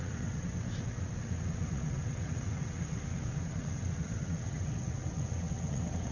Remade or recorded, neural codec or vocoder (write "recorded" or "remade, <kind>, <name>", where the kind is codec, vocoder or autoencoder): remade, vocoder, WaveNeXt